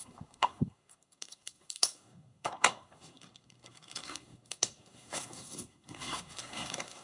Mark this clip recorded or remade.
remade